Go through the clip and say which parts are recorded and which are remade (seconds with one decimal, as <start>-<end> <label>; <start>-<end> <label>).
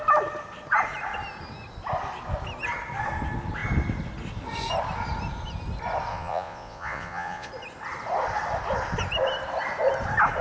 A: 0.0-6.1 recorded; 6.1-7.5 remade; 7.5-10.4 recorded